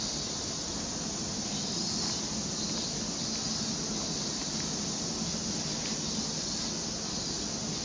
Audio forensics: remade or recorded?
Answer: recorded